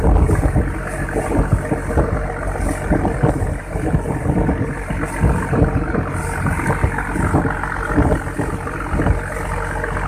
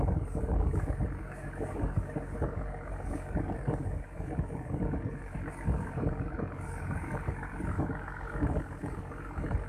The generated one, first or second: second